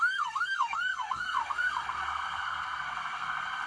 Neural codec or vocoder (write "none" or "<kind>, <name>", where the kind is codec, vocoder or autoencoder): codec, SNAC